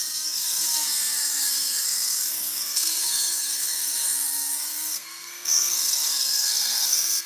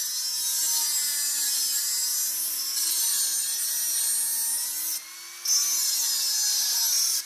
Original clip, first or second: second